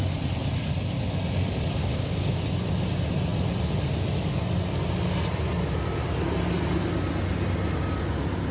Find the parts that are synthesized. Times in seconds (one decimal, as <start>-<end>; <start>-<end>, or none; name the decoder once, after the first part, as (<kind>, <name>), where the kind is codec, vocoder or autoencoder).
1.8-2.4 (codec, DAC)